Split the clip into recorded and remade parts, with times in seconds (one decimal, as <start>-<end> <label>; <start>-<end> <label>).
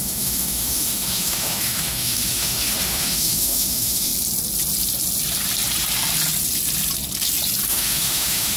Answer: 0.0-4.1 remade; 4.1-7.7 recorded; 7.7-8.6 remade